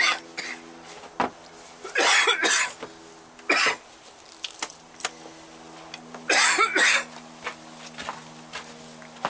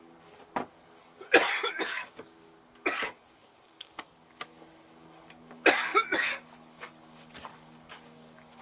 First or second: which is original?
first